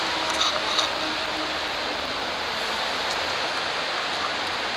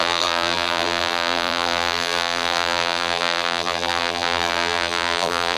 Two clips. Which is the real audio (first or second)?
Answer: first